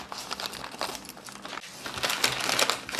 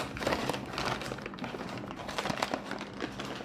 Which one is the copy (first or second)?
second